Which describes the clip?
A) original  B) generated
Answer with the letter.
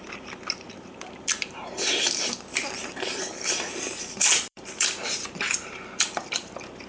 B